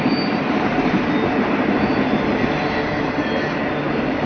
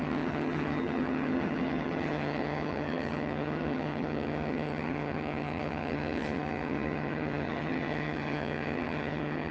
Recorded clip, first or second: first